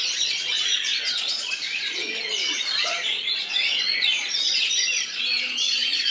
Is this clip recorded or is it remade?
remade